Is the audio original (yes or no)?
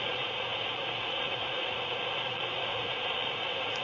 no